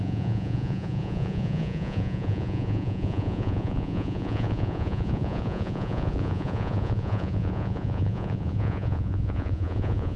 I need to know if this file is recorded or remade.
remade